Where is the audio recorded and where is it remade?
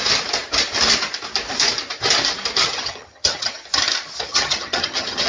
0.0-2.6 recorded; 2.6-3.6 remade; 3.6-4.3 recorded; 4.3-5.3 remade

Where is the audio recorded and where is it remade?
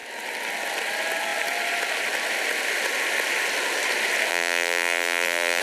0.0-4.3 recorded; 4.3-5.6 remade